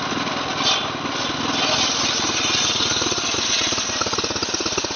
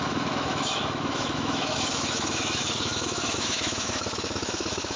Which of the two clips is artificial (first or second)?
second